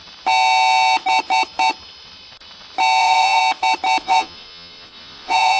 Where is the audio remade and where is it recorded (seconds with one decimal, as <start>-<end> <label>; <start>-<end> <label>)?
0.0-3.0 recorded; 3.0-3.4 remade; 3.4-4.0 recorded; 4.0-5.6 remade